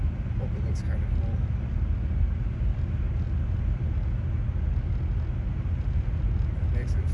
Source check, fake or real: real